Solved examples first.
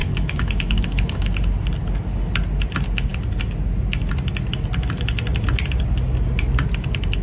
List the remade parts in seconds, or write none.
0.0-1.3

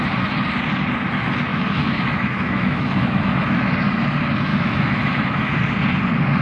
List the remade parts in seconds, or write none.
1.5-3.4; 4.5-5.6